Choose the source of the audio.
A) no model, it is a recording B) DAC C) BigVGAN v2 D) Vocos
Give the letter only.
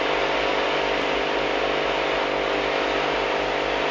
A